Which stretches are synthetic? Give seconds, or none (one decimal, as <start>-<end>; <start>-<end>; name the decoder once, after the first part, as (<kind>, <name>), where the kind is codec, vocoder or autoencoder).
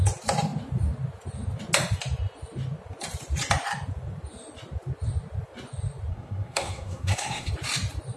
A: 6.1-7.5 (codec, SNAC)